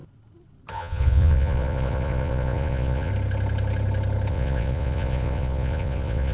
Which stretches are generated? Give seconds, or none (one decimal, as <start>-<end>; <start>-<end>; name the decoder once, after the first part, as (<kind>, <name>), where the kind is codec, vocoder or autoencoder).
0.7-3.1 (vocoder, Vocos); 4.3-6.3